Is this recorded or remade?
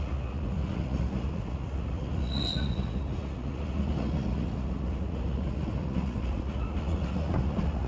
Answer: remade